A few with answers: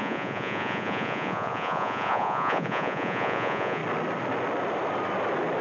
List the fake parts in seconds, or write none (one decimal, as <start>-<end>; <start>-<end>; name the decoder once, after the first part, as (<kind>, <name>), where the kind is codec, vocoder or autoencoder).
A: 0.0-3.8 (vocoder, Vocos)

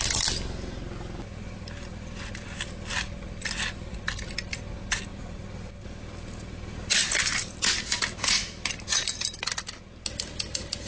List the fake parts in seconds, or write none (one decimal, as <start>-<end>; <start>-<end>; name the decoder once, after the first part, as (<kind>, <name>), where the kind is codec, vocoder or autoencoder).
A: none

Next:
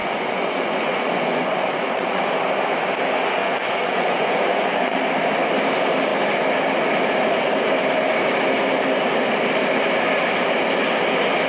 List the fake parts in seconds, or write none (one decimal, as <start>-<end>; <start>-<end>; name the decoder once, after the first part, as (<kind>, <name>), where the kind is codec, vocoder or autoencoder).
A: 0.0-2.2 (vocoder, Vocos); 3.4-5.0